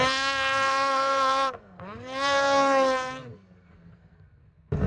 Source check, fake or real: fake